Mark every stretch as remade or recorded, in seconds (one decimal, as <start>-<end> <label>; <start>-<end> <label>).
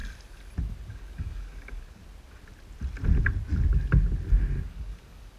0.0-0.9 recorded; 0.9-2.0 remade; 2.0-4.7 recorded; 4.7-5.4 remade